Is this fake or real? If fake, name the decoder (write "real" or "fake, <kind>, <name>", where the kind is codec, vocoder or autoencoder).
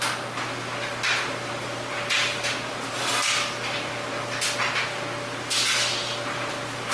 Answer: real